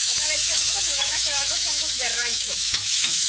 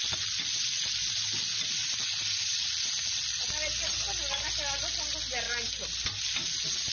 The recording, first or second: second